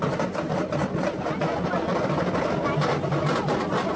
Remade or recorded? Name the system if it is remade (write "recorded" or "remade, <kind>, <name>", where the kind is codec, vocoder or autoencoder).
recorded